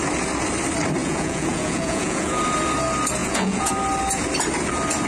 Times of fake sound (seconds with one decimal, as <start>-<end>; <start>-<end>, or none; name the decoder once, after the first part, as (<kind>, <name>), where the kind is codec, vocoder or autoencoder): 1.0-2.4 (vocoder, Vocos); 3.2-3.7